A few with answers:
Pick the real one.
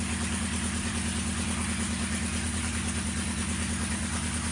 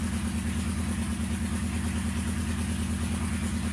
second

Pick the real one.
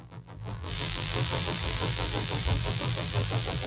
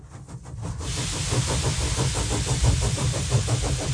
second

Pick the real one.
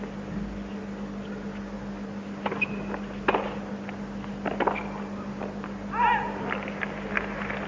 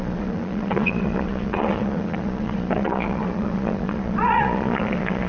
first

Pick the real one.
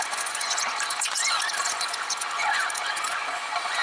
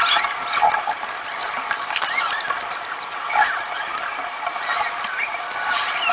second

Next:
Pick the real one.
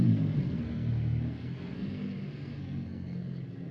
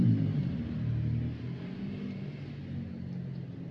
second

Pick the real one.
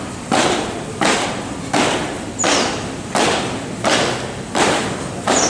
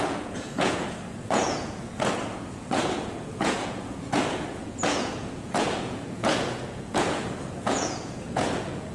first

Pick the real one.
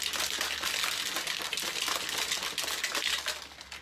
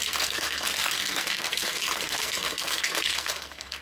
first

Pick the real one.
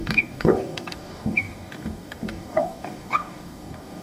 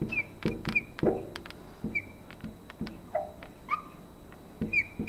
second